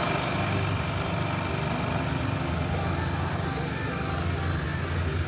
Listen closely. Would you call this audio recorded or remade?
recorded